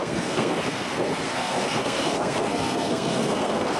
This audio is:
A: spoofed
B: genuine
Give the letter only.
A